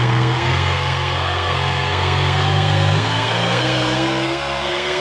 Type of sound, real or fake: fake